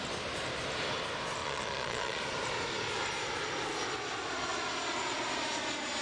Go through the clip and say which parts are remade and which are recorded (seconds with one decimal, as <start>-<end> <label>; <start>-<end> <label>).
0.0-1.4 recorded; 1.4-2.2 remade; 2.2-6.0 recorded